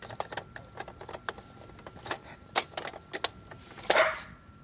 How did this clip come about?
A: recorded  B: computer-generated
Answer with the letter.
A